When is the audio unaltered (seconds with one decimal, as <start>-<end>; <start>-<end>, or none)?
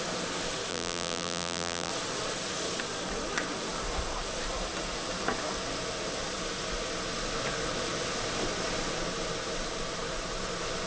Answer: 0.0-0.7; 1.9-10.9